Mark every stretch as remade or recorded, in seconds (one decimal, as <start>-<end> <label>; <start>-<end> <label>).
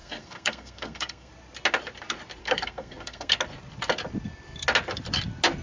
0.0-1.3 remade; 1.3-2.4 recorded; 2.4-3.3 remade; 3.3-5.6 recorded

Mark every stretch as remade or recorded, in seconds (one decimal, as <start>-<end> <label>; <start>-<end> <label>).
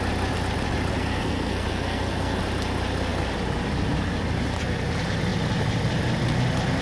0.0-0.9 recorded; 0.9-2.4 remade; 2.4-6.8 recorded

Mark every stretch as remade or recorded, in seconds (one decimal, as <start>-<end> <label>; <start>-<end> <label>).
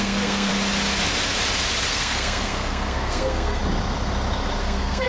0.0-0.5 remade; 0.5-1.9 recorded; 1.9-3.6 remade; 3.6-4.6 recorded; 4.6-5.1 remade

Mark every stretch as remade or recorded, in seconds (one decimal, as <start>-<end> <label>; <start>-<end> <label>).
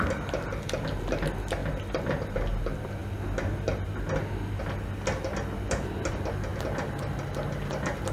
0.0-8.1 recorded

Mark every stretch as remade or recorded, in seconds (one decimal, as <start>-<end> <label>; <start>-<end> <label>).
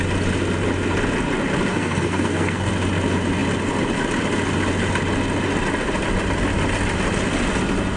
0.0-1.7 recorded; 1.7-2.7 remade; 2.7-8.0 recorded